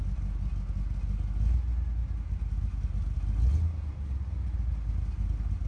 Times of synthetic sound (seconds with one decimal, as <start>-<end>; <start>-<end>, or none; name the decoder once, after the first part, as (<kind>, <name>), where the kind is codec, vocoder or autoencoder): none